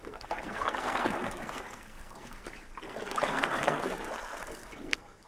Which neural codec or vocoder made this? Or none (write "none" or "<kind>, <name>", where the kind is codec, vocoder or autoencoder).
codec, SNAC